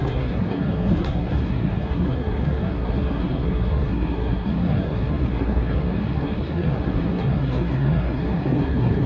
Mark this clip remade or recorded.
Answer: remade